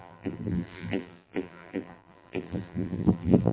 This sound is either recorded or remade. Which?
remade